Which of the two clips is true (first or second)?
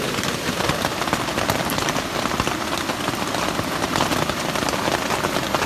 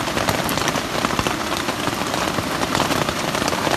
first